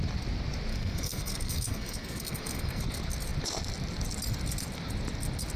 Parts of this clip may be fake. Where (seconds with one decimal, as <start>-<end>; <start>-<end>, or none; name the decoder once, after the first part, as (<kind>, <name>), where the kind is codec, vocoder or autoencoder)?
0.7-2.8 (codec, SNAC)

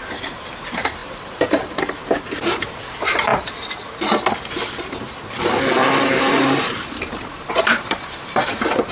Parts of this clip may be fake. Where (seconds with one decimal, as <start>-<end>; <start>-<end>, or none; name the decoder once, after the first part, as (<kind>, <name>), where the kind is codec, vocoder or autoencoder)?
0.0-3.3 (vocoder, BigVGAN v2); 6.6-8.9